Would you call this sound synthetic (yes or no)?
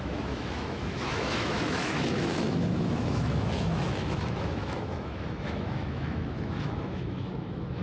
yes